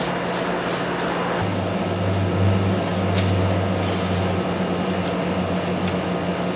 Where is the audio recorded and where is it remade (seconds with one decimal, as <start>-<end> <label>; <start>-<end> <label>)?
0.0-6.6 recorded